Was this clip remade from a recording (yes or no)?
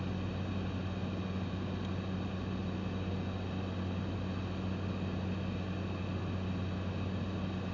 no